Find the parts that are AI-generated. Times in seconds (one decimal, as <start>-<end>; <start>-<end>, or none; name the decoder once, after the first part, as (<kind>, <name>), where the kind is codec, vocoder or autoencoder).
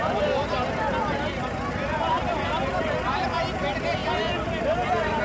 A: none